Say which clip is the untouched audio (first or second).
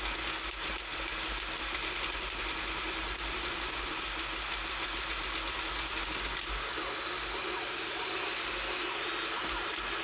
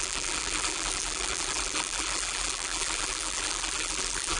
first